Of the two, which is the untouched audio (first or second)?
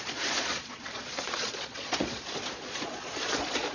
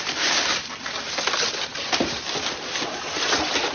second